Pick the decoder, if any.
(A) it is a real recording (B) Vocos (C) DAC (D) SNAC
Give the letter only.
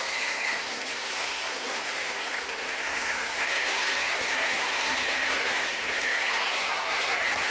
D